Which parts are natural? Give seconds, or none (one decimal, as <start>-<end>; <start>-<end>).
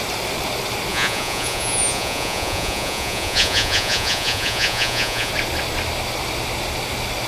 0.0-0.9; 5.3-7.3